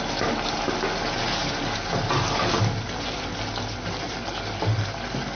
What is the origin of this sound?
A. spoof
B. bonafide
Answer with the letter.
B